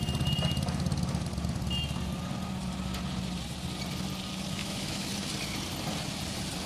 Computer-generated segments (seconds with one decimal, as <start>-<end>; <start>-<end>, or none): 4.6-5.1